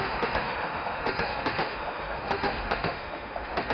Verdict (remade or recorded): remade